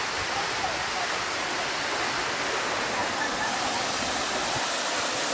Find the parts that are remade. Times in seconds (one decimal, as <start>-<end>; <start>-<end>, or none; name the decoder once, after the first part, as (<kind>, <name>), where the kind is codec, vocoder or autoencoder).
none